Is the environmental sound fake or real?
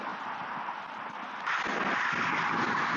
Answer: real